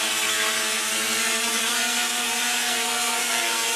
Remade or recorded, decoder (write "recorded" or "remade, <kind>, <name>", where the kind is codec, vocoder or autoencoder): remade, codec, SNAC